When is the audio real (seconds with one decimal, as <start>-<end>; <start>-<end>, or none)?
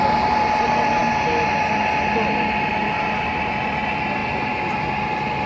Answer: 0.0-5.5